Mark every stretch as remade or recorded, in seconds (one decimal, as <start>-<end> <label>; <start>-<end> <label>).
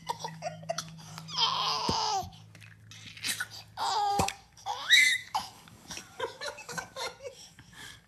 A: 0.0-1.1 remade; 1.1-4.1 recorded; 4.1-8.1 remade